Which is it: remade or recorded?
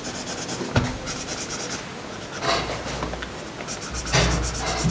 recorded